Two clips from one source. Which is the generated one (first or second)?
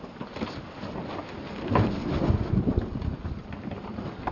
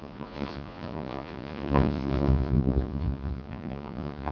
second